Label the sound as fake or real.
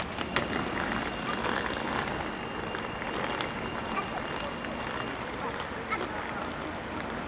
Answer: real